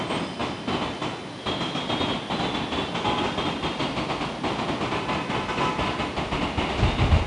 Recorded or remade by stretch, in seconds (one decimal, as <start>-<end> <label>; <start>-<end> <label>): 0.0-7.3 recorded